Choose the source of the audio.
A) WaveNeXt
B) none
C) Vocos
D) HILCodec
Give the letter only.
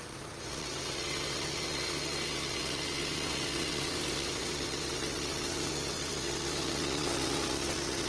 A